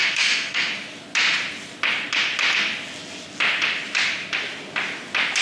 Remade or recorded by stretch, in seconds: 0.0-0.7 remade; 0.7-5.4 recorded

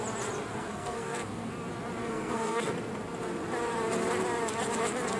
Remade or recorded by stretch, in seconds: 0.0-0.5 recorded; 0.5-1.5 remade; 1.5-2.0 recorded; 2.0-2.7 remade; 2.7-5.2 recorded

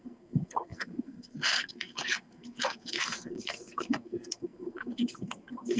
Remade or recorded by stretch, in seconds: 0.0-5.8 remade

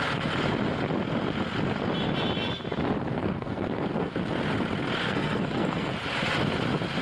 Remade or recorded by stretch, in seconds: 0.0-3.1 recorded; 3.1-4.1 remade; 4.1-5.0 recorded; 5.0-5.9 remade; 5.9-7.0 recorded

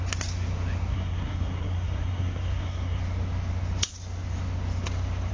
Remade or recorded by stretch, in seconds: 0.0-0.9 recorded; 0.9-3.0 remade; 3.0-5.3 recorded

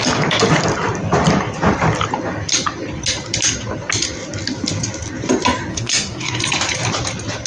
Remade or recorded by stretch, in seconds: 0.0-5.7 recorded; 5.7-6.4 remade; 6.4-7.5 recorded

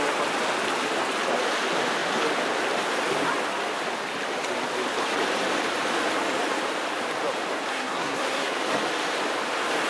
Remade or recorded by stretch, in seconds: 0.0-7.7 recorded; 7.7-8.5 remade; 8.5-9.9 recorded

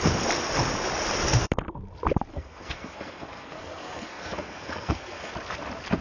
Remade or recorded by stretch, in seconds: 0.0-2.3 recorded; 2.3-5.3 remade; 5.3-6.0 recorded